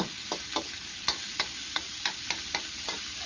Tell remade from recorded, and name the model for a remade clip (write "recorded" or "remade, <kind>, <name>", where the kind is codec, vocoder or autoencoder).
recorded